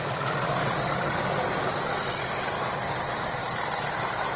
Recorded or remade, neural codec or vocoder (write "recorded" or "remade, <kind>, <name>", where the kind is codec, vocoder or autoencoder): recorded